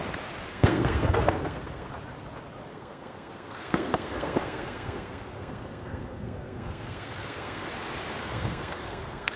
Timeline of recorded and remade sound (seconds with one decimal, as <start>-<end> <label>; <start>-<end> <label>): 0.0-0.5 recorded; 0.5-1.9 remade; 1.9-2.7 recorded; 2.7-7.7 remade; 7.7-8.2 recorded; 8.2-9.4 remade